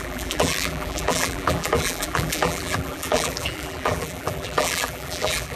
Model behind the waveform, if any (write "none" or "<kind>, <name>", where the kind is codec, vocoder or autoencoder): vocoder, BigVGAN v2